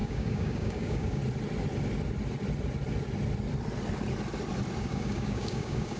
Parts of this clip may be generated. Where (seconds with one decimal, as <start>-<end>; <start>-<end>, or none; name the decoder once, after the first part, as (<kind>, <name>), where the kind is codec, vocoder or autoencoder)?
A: 0.0-1.2 (codec, DAC); 4.8-6.0